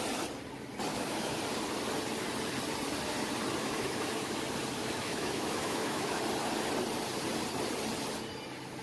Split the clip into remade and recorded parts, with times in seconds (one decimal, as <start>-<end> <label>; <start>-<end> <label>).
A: 0.0-0.9 recorded; 0.9-1.4 remade; 1.4-3.6 recorded; 3.6-4.3 remade; 4.3-4.8 recorded; 4.8-6.2 remade; 6.2-8.8 recorded

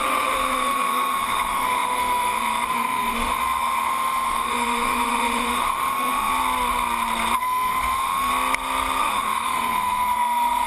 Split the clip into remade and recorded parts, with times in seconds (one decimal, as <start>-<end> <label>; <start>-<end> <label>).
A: 0.0-6.3 remade; 6.3-7.4 recorded; 7.4-8.3 remade; 8.3-9.0 recorded; 9.0-10.7 remade

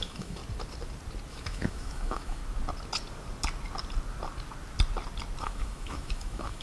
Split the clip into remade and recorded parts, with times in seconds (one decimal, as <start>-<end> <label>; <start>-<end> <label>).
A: 0.0-0.4 remade; 0.4-1.3 recorded; 1.3-2.4 remade; 2.4-5.4 recorded; 5.4-6.6 remade